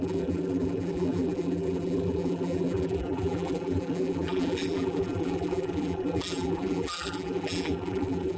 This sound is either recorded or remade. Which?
remade